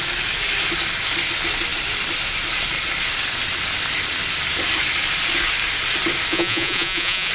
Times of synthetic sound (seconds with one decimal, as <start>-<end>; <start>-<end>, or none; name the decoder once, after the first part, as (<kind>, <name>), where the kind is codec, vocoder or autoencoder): 6.3-7.3 (vocoder, Vocos)